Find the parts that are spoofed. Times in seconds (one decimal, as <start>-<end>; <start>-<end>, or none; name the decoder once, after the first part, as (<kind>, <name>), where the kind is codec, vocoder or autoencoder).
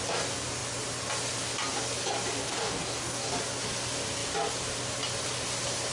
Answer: 2.4-3.3 (codec, DAC)